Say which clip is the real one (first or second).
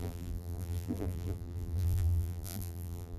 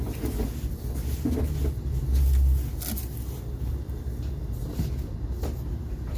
second